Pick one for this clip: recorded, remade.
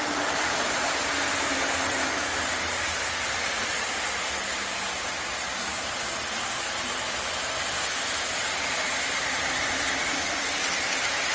recorded